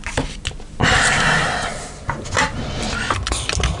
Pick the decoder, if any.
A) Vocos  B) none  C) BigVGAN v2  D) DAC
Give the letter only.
B